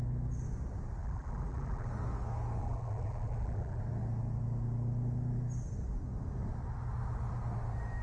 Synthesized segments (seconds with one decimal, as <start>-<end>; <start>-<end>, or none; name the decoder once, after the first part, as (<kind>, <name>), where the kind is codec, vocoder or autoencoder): 1.0-1.9 (vocoder, BigVGAN v2); 2.6-3.8